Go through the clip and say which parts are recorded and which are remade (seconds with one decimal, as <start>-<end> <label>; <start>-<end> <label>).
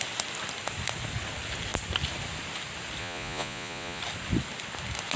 0.0-3.0 recorded; 3.0-4.0 remade; 4.0-5.2 recorded